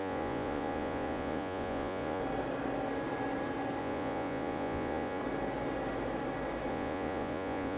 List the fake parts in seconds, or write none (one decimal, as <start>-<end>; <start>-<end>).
0.0-2.2; 3.8-5.2; 6.7-7.8